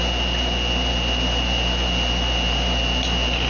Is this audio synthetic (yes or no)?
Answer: no